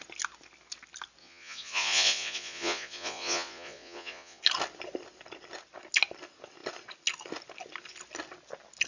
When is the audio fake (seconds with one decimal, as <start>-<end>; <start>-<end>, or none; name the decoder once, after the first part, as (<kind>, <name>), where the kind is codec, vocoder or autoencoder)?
1.2-4.4 (vocoder, Vocos)